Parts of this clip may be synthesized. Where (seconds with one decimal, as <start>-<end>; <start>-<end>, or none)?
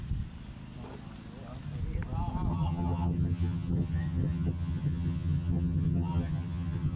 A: 2.5-7.0